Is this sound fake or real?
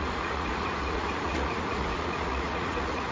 fake